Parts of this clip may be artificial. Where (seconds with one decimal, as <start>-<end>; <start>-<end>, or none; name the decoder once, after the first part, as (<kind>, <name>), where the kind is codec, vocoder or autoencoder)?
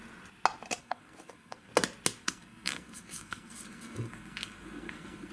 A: 0.8-1.7 (codec, SNAC); 2.2-5.3